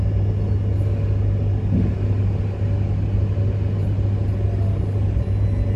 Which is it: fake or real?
real